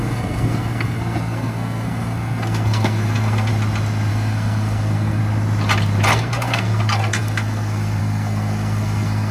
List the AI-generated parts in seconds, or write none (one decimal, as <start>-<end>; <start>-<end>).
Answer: 0.0-3.5; 4.1-5.2; 6.1-9.3